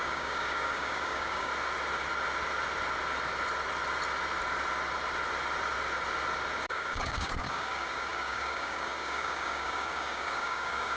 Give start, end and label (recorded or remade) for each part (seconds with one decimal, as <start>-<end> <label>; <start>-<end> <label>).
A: 0.0-1.5 remade; 1.5-6.6 recorded; 6.6-11.0 remade